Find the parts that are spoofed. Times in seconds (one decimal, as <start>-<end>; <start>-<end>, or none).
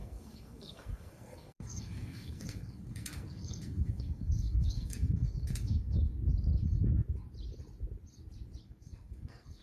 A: 0.0-6.1; 8.6-9.6